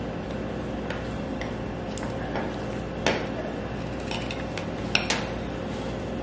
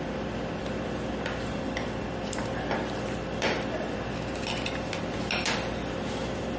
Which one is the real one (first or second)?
first